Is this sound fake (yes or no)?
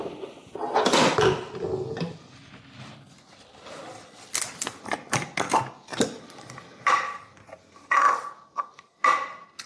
no